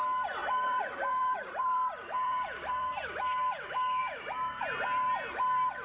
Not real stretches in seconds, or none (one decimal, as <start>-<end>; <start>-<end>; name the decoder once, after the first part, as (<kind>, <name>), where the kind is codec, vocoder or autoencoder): 0.4-2.9 (vocoder, BigVGAN v2); 4.0-4.8